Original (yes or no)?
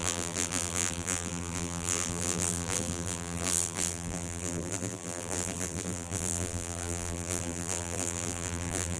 no